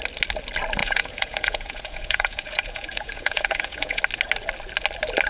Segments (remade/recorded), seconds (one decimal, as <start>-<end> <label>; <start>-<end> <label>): 0.0-0.8 recorded; 0.8-4.0 remade; 4.0-5.3 recorded

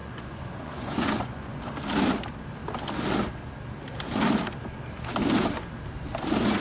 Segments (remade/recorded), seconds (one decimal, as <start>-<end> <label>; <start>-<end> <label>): 0.0-1.6 remade; 1.6-6.6 recorded

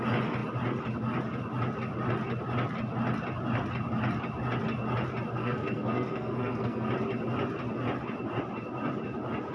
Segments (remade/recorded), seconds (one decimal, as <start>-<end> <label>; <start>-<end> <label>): 0.0-5.4 recorded; 5.4-6.9 remade; 6.9-9.5 recorded

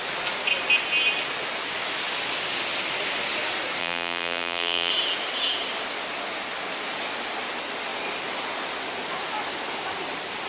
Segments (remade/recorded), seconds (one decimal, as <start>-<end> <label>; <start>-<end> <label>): 0.0-3.8 recorded; 3.8-4.9 remade; 4.9-10.5 recorded